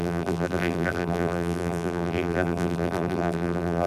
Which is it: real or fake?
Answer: fake